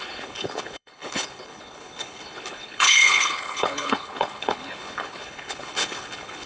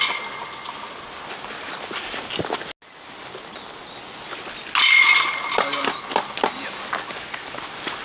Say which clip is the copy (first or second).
first